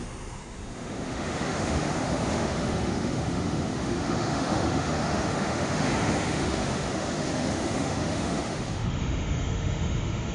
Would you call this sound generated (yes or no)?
yes